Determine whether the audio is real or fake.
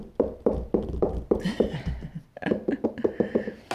real